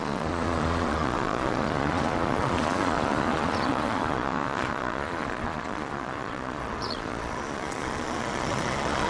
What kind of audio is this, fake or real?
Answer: fake